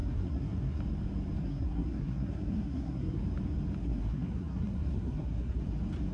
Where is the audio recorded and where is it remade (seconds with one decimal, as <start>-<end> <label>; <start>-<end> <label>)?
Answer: 0.0-0.8 remade; 0.8-1.4 recorded; 1.4-3.2 remade; 3.2-3.8 recorded; 3.8-5.6 remade; 5.6-6.1 recorded